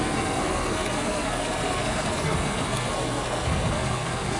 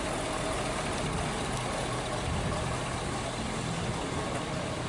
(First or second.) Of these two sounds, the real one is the second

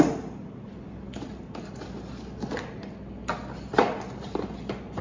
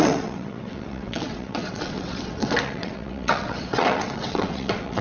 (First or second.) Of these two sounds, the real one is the first